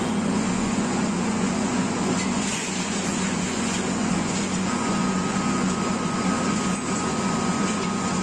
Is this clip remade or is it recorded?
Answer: remade